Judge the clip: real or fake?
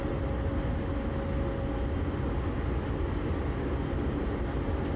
real